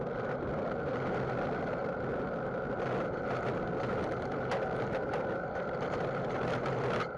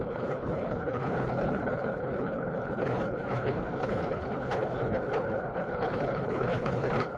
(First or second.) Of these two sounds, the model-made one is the second